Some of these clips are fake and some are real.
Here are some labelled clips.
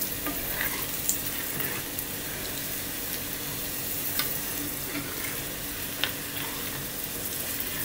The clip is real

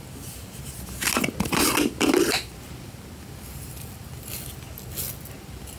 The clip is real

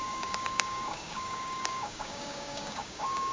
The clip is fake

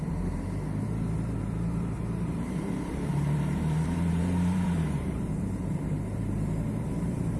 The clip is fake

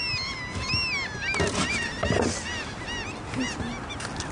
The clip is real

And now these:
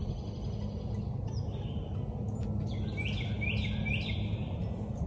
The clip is real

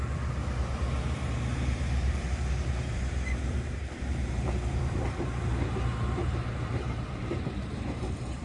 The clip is fake